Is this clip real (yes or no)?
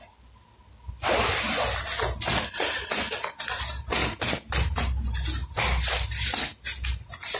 yes